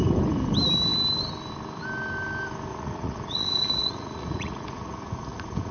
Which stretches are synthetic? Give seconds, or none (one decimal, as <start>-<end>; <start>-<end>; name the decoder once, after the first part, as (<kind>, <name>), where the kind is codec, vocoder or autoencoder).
2.7-5.7 (vocoder, Vocos)